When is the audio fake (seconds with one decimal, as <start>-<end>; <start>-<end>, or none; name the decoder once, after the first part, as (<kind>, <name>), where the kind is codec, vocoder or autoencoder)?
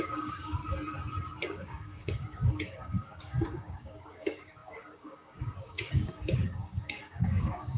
0.0-0.6 (codec, DAC); 1.5-7.8